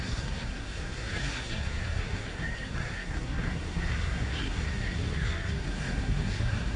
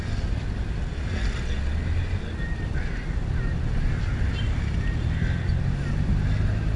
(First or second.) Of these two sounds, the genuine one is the second